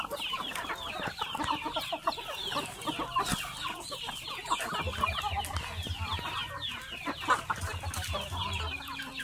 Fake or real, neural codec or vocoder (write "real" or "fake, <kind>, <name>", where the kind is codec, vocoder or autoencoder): real